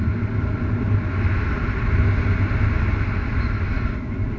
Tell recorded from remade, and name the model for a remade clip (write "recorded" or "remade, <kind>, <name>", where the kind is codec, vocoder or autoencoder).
recorded